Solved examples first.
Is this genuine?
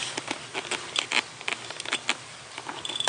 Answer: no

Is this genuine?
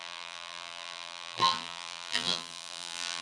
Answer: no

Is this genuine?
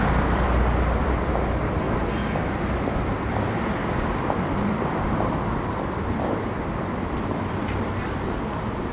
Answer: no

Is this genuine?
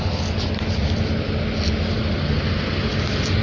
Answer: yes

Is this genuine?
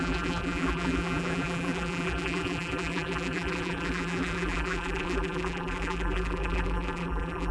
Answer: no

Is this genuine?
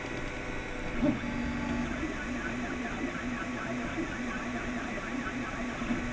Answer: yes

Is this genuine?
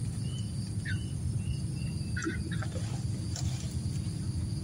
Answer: yes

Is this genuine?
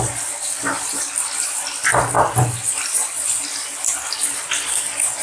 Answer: yes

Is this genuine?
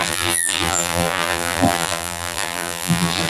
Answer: no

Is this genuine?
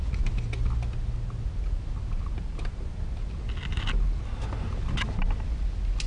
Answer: yes